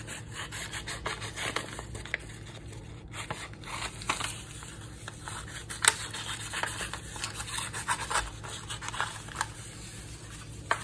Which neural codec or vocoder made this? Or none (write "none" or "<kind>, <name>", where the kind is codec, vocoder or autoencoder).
none